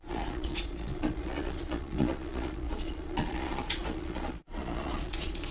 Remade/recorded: remade